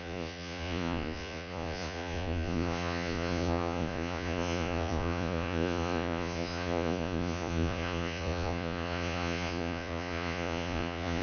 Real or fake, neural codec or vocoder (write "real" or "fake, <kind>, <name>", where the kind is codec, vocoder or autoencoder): fake, vocoder, Vocos